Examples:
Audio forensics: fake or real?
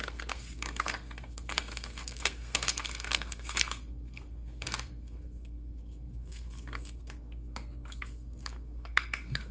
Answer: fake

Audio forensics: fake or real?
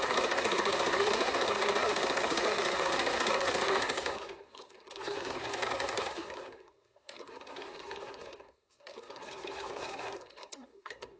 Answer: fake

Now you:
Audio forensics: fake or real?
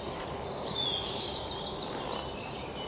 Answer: real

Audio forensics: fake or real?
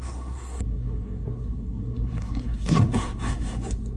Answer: fake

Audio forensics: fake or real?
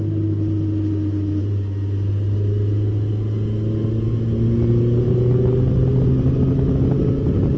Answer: real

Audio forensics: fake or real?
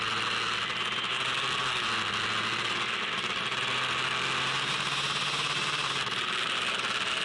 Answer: real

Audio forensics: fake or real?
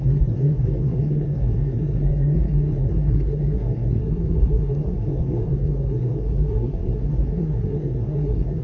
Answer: fake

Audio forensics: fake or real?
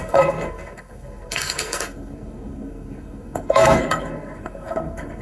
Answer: fake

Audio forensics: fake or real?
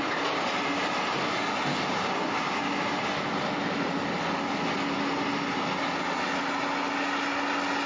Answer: real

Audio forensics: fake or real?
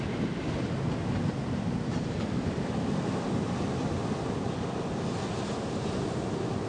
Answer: real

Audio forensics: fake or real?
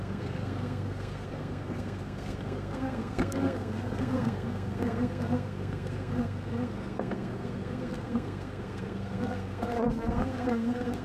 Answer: fake